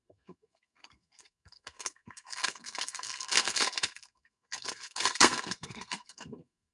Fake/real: fake